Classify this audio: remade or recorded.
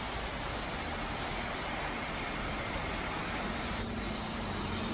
recorded